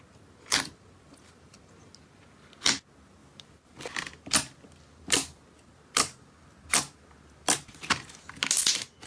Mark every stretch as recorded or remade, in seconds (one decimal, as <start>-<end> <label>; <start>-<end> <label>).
0.0-3.2 recorded; 3.2-3.8 remade; 3.8-9.1 recorded